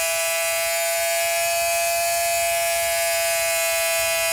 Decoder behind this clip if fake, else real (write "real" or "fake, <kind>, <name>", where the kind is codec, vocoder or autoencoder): real